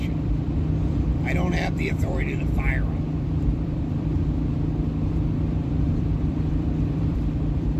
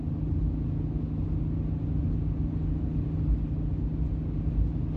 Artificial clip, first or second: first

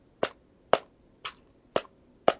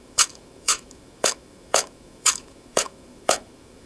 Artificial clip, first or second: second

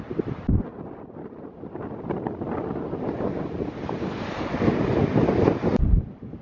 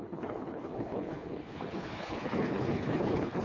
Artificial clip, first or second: second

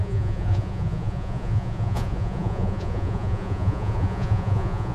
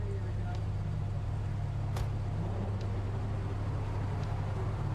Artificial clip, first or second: first